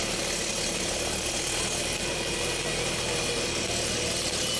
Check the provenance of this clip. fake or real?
real